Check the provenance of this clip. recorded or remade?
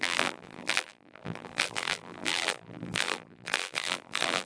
remade